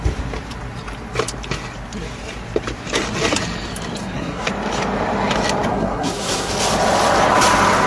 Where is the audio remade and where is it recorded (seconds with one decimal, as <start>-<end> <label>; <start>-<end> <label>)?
0.0-4.0 recorded; 4.0-4.5 remade; 4.5-5.7 recorded; 5.7-6.5 remade; 6.5-7.9 recorded